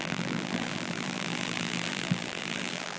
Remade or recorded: remade